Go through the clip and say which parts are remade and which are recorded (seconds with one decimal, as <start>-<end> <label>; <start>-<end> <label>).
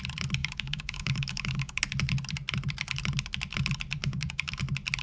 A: 0.0-0.4 recorded; 0.4-1.8 remade; 1.8-4.0 recorded; 4.0-4.6 remade; 4.6-5.0 recorded